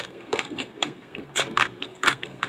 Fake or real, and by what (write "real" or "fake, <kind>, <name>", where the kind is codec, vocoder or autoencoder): fake, codec, SNAC